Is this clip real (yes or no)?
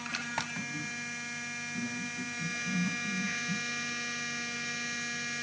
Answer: yes